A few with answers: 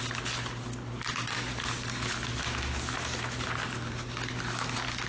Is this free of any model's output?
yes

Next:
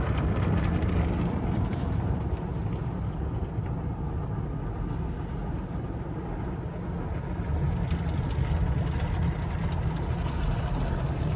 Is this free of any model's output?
yes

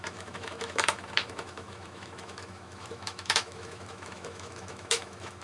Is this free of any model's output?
no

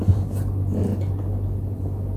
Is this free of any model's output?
yes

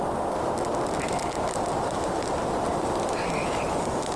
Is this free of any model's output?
yes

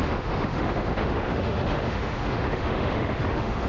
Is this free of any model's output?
no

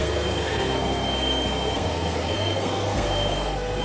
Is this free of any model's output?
no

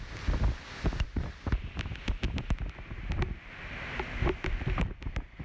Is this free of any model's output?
yes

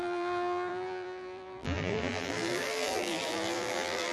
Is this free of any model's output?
no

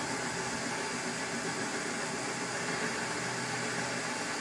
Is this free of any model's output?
yes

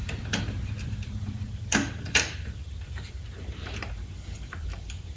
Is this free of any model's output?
no